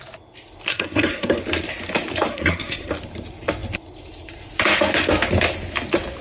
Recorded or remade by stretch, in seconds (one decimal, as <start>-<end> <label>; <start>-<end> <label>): 0.0-0.7 recorded; 0.7-1.4 remade; 1.4-2.3 recorded; 2.3-2.9 remade; 2.9-6.2 recorded